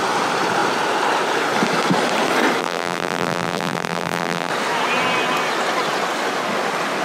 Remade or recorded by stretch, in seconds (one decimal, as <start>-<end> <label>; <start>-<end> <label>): 0.0-2.6 recorded; 2.6-4.5 remade; 4.5-7.0 recorded

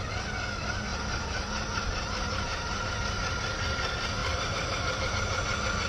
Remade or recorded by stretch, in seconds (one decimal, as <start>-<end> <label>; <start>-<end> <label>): 0.0-0.9 recorded; 0.9-2.9 remade; 2.9-4.2 recorded; 4.2-5.1 remade; 5.1-5.9 recorded

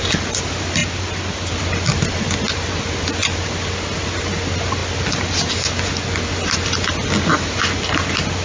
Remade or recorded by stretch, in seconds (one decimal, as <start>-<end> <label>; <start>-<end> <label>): 0.0-8.4 recorded

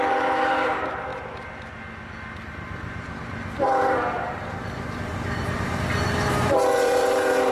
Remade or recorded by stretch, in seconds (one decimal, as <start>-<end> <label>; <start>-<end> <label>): 0.0-1.1 remade; 1.1-2.5 recorded; 2.5-5.1 remade; 5.1-6.3 recorded; 6.3-7.5 remade

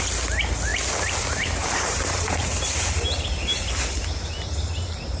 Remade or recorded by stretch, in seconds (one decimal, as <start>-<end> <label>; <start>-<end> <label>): 0.0-0.7 recorded; 0.7-3.8 remade; 3.8-5.2 recorded

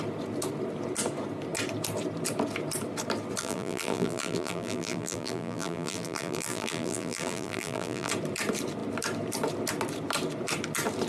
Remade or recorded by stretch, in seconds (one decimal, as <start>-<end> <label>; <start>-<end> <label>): 0.0-3.4 recorded; 3.4-8.1 remade; 8.1-11.1 recorded